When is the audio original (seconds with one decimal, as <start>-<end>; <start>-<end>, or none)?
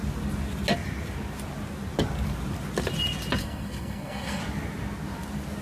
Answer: 0.0-3.4; 4.4-5.6